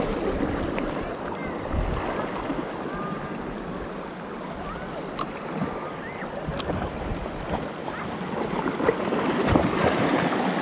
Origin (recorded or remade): recorded